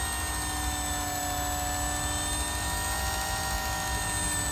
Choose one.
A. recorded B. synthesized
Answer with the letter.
A